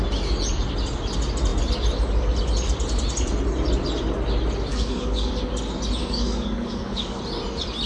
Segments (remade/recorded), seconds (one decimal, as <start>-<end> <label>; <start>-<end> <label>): 0.0-4.7 recorded; 4.7-5.3 remade; 5.3-6.0 recorded; 6.0-7.2 remade; 7.2-7.9 recorded